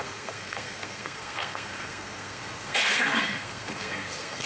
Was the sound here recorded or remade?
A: remade